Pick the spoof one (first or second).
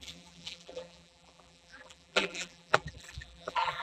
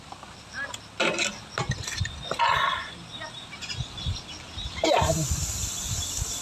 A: first